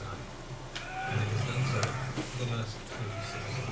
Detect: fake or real real